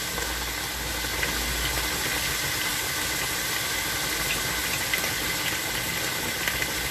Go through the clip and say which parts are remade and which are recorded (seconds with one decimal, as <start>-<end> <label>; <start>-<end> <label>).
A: 0.0-6.9 recorded